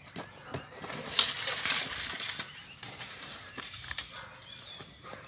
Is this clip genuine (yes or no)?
yes